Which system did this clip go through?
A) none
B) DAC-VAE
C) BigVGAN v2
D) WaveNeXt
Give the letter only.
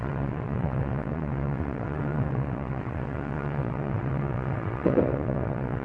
D